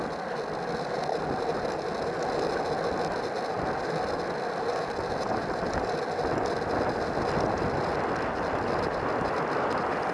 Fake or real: real